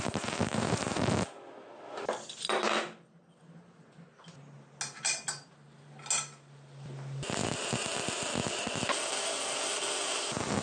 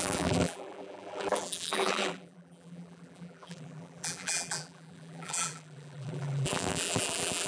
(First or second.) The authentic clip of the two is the first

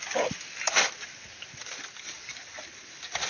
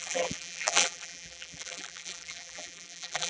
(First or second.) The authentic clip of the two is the first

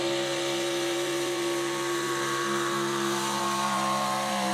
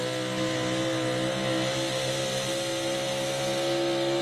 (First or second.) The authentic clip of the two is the second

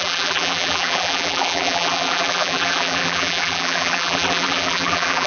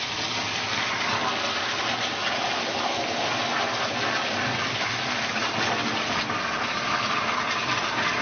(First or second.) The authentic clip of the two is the second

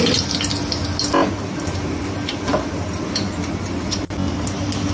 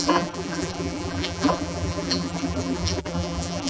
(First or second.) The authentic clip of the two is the first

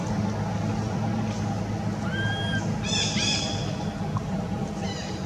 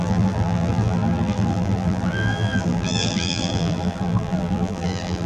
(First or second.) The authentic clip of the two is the first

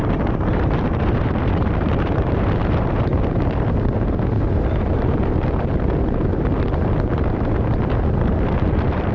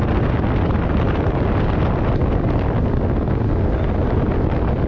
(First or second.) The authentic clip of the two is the second